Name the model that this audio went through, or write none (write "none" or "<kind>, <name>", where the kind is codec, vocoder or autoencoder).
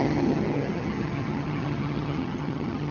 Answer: vocoder, HiFi-GAN